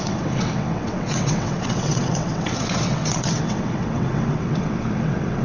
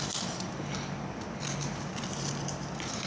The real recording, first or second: second